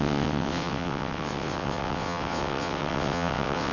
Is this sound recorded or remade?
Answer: remade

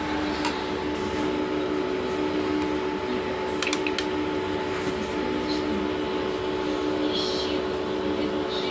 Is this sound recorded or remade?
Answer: recorded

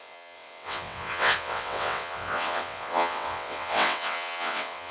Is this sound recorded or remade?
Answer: remade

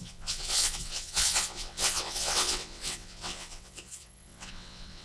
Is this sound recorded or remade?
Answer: remade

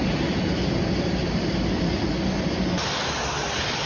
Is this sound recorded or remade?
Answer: recorded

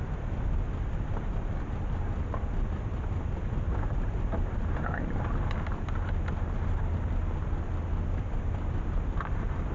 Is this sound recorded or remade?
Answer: recorded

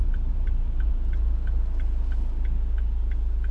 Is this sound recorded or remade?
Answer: recorded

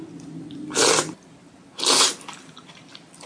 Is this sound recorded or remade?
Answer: recorded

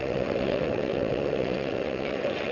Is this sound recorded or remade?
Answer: remade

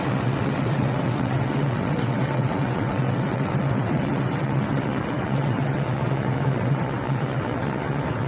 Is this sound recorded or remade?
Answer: remade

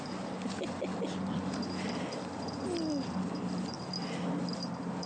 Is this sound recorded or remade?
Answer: recorded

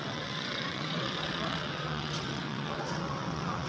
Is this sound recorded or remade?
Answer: remade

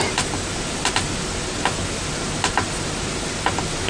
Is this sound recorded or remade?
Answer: recorded